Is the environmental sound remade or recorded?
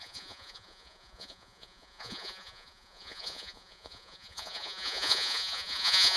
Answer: remade